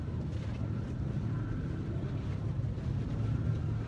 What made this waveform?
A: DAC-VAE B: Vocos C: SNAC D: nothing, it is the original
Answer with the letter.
D